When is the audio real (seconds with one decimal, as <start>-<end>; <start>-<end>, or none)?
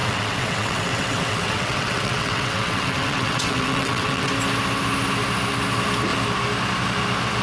4.3-7.4